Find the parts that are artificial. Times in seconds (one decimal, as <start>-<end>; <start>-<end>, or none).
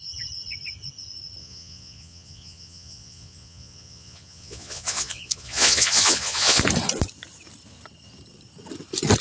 1.4-6.6